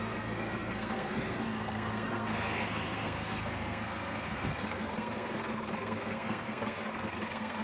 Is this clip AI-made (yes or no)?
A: yes